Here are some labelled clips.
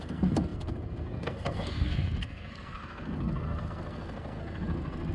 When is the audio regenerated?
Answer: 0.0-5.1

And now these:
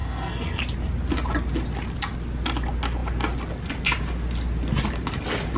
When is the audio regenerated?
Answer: 0.0-0.6